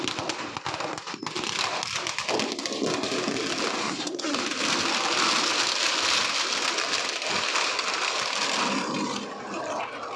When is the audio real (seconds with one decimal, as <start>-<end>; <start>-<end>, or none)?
0.0-3.8; 4.4-10.2